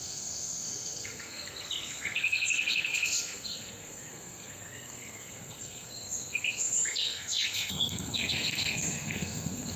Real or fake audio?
fake